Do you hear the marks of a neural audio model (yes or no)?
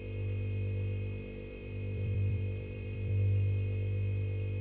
yes